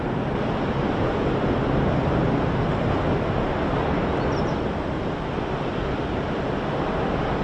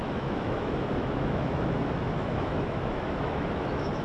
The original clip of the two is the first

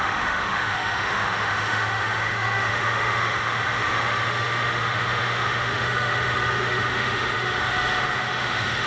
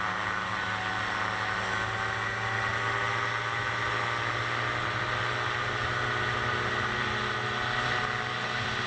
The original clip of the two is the second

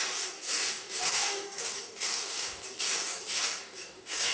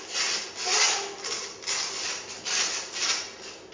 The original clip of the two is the second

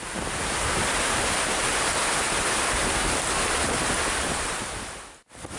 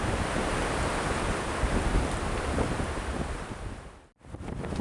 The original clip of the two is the first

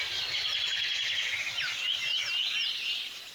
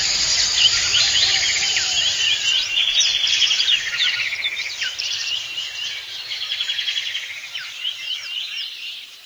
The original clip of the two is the first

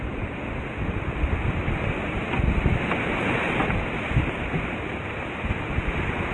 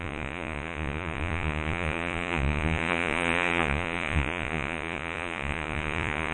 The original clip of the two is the first